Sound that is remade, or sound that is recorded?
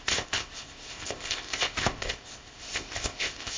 remade